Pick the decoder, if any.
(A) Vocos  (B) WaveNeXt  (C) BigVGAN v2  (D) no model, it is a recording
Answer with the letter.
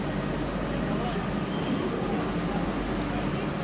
D